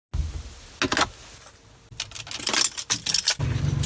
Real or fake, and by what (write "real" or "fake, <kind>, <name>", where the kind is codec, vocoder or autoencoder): real